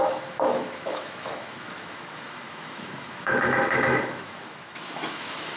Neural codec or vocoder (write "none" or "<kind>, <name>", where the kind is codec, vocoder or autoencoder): autoencoder, DAC-VAE